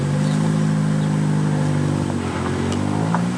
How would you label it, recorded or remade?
recorded